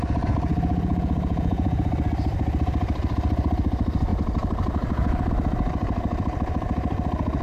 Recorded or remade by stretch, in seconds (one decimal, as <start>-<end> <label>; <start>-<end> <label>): 0.0-0.5 recorded; 0.5-1.8 remade; 1.8-7.4 recorded